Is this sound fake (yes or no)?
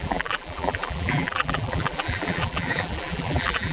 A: yes